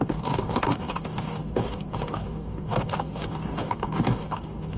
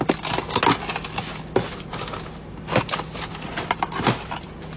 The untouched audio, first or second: second